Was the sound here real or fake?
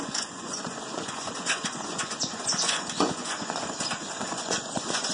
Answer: fake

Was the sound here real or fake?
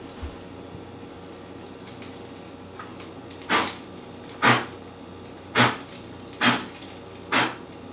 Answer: real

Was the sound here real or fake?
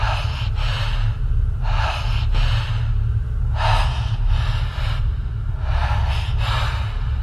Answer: real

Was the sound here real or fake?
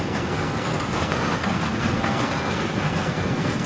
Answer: fake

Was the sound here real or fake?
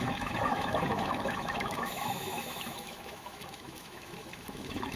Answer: fake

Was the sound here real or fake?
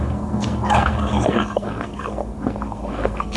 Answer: fake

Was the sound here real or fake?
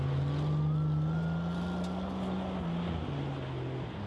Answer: real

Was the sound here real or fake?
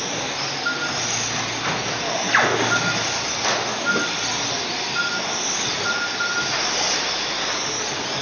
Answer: real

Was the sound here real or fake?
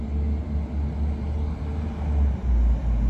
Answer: real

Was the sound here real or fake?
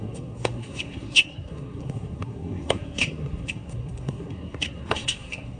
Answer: fake